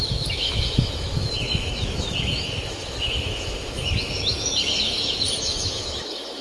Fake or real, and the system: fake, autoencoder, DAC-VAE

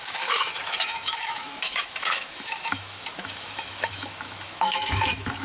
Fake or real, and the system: fake, autoencoder, DAC-VAE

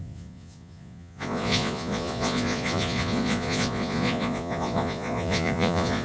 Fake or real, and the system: fake, vocoder, Vocos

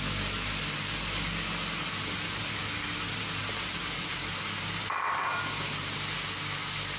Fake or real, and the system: real